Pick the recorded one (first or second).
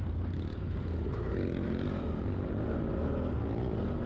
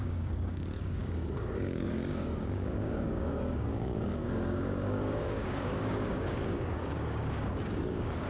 first